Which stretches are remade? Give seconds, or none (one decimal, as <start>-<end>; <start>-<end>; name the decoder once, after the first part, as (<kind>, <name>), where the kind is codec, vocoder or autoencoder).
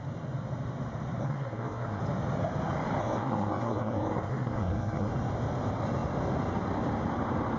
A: 1.2-2.0 (codec, SNAC); 3.0-5.1